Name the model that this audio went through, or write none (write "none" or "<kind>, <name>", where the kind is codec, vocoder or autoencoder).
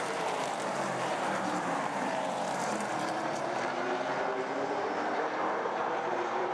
vocoder, BigVGAN v2